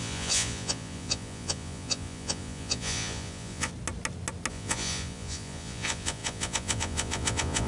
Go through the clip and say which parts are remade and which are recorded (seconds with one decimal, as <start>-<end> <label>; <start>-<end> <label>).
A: 0.0-3.7 remade; 3.7-4.5 recorded; 4.5-7.7 remade